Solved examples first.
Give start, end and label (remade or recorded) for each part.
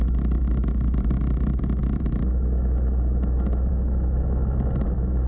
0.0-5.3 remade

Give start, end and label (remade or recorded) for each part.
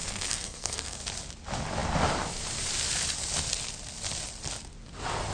0.0-1.0 remade; 1.0-5.3 recorded